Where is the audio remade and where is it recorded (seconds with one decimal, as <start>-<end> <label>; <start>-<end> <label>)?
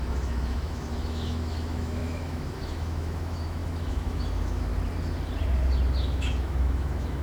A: 0.0-4.7 remade; 4.7-6.0 recorded; 6.0-7.2 remade